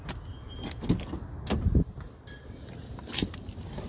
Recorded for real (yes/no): yes